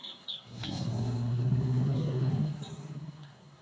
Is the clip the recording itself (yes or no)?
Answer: no